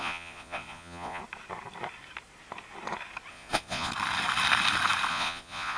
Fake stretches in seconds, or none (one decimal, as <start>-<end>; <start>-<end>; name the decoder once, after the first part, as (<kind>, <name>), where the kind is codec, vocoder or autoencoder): 0.0-1.2 (vocoder, Vocos); 3.3-3.9; 5.1-5.8

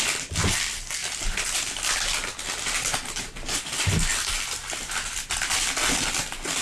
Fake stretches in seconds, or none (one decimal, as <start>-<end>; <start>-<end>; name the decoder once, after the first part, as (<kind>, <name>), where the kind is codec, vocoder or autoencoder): none

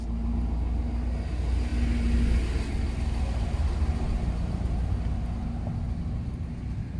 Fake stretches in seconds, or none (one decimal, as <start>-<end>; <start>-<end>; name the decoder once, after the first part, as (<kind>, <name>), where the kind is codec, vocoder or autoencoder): none

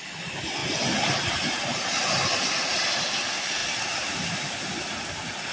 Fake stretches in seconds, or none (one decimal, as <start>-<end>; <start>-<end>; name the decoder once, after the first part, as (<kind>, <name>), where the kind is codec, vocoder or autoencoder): none

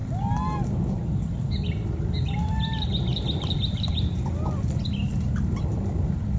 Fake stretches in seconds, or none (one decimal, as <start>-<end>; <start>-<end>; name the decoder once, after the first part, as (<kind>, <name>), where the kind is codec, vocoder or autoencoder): none

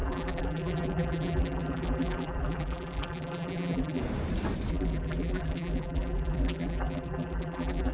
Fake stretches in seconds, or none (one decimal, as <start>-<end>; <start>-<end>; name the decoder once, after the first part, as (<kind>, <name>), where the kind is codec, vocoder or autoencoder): 0.0-4.0 (vocoder, BigVGAN v2); 4.7-7.9

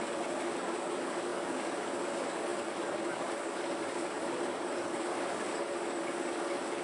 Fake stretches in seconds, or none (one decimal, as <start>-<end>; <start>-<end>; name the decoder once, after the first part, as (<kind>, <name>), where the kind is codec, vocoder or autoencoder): 0.0-6.8 (codec, DAC)

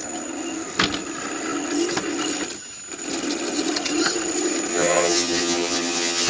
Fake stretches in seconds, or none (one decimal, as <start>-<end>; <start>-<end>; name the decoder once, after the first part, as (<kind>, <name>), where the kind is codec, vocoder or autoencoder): 4.7-6.3 (vocoder, HiFi-GAN)